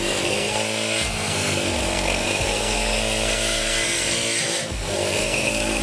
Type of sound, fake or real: fake